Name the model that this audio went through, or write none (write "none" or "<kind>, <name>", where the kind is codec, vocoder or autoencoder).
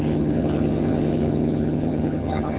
vocoder, HiFi-GAN